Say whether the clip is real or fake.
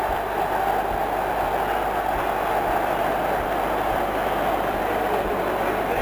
real